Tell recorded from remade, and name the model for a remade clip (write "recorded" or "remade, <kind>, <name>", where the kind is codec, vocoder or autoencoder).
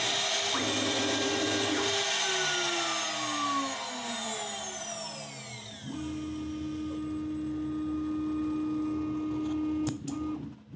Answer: recorded